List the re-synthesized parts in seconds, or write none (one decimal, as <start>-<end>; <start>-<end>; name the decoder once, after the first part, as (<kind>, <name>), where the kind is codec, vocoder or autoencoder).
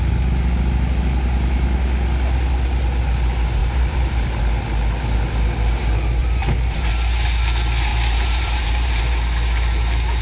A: 3.6-4.4 (vocoder, BigVGAN v2); 6.2-6.9; 7.9-9.0